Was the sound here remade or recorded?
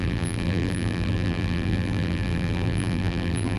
remade